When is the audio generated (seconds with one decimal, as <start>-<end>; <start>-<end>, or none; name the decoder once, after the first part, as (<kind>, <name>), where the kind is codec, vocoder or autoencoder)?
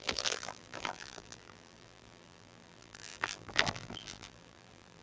0.0-5.0 (vocoder, BigVGAN v2)